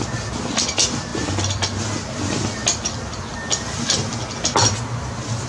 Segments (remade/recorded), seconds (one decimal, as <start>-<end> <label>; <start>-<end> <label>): 0.0-5.5 recorded